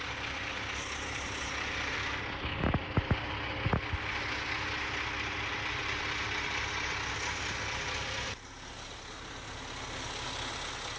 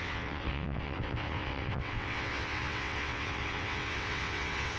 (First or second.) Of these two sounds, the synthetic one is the second